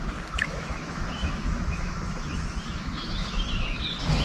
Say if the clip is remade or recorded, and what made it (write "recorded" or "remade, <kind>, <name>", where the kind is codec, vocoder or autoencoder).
remade, autoencoder, DAC-VAE